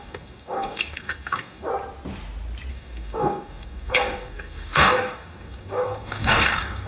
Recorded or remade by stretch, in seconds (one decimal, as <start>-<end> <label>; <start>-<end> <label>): 0.0-1.7 remade; 1.7-2.7 recorded; 2.7-6.9 remade